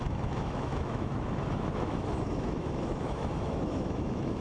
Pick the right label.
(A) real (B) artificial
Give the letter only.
B